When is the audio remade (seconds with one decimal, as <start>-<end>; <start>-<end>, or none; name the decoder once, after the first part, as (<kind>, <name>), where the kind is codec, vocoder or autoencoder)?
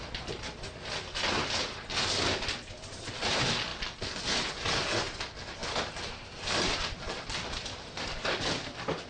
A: 5.6-9.1 (vocoder, BigVGAN v2)